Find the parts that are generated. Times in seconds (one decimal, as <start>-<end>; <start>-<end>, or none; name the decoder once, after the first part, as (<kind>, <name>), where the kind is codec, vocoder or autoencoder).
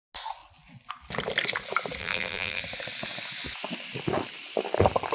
2.0-2.6 (vocoder, BigVGAN v2)